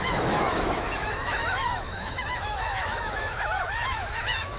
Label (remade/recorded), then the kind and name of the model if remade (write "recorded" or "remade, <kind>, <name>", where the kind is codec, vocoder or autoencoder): remade, autoencoder, DAC-VAE